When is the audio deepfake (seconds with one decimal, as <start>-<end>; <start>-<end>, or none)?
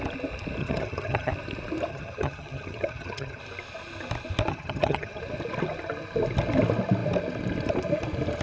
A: 0.6-1.3; 1.9-3.4; 4.5-5.2